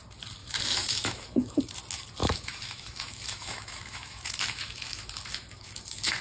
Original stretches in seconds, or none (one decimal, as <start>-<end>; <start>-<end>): 0.0-0.4; 1.6-2.2